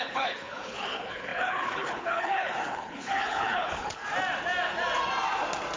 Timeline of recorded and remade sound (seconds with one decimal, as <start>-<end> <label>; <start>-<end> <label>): 0.0-4.0 remade; 4.0-5.8 recorded